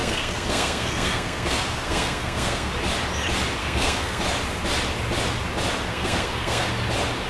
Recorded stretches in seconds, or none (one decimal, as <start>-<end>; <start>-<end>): 2.7-3.6; 4.2-5.9; 6.7-7.3